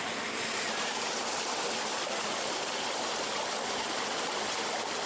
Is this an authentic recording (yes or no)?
yes